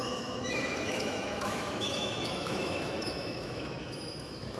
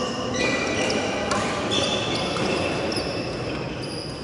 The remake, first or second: first